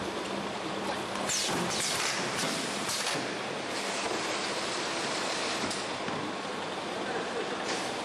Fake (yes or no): yes